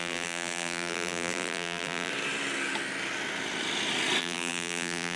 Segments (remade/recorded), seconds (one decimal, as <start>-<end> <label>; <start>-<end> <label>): 0.0-2.1 remade; 2.1-4.2 recorded; 4.2-5.2 remade